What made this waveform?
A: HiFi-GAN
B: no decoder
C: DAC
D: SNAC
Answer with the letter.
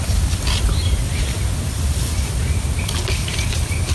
B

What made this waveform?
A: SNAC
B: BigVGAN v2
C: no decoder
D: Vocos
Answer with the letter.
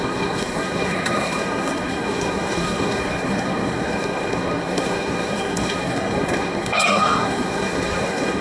A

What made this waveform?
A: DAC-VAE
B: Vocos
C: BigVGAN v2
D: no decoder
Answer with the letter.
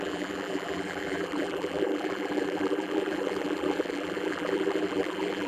C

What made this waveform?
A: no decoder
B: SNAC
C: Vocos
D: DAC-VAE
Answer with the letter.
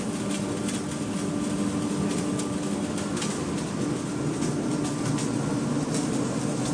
A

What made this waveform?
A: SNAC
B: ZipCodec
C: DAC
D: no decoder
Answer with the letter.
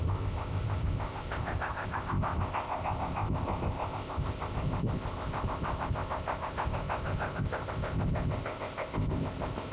B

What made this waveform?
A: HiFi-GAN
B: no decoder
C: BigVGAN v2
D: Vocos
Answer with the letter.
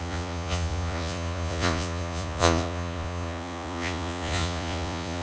D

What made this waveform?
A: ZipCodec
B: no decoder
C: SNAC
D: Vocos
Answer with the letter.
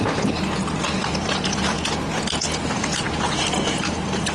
B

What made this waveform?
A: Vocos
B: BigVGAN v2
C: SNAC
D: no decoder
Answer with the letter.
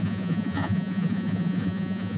A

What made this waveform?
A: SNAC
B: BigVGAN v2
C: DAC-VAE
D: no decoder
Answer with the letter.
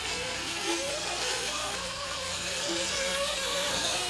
A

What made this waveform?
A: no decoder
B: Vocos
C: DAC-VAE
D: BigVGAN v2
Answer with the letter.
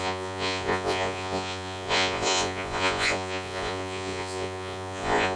B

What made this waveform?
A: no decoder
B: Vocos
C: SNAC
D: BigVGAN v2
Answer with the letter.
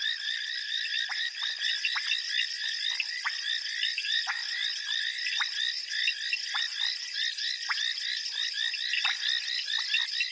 A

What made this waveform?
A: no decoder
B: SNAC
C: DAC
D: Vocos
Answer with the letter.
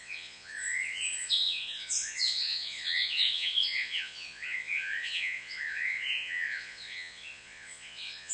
D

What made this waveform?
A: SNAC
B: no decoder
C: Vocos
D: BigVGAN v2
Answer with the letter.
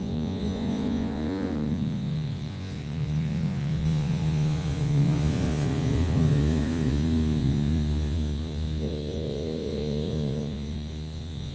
C